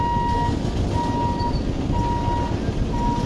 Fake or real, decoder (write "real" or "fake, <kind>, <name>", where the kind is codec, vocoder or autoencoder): real